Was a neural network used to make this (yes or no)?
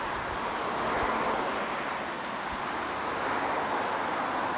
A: no